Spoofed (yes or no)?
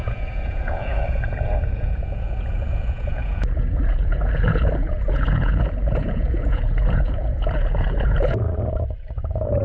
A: yes